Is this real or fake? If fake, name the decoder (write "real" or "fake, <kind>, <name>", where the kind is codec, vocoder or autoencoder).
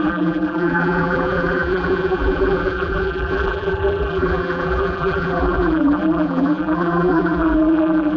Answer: fake, vocoder, BigVGAN v2